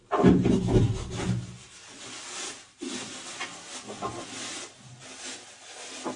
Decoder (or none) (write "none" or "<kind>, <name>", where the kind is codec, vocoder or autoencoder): none